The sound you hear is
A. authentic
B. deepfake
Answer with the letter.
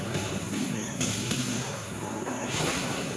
B